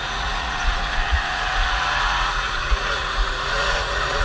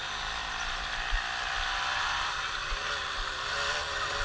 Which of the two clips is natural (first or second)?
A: second